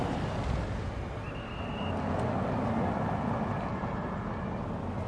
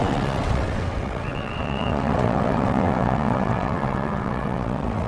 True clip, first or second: first